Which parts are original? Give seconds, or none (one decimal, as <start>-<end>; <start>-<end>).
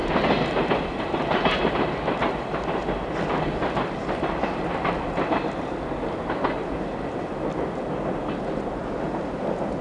0.0-9.8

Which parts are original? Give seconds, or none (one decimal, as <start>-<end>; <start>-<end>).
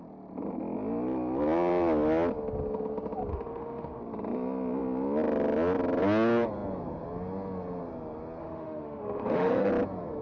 0.0-3.3; 4.0-8.4; 9.7-10.2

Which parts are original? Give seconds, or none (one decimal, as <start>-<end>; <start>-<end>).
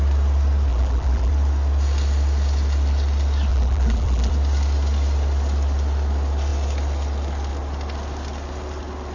0.0-0.7; 1.3-3.5; 4.3-9.1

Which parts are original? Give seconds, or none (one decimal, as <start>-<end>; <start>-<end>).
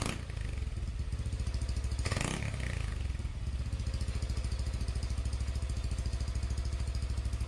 0.0-7.5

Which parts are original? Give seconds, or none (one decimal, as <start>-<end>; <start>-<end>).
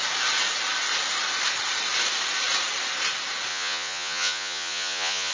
0.0-3.5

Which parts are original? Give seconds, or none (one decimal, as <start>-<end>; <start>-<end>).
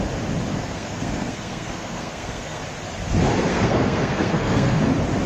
0.0-0.5; 2.6-3.5; 4.8-5.3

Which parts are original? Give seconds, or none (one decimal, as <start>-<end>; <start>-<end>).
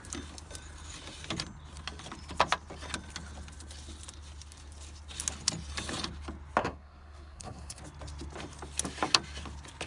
0.0-6.6; 7.8-9.9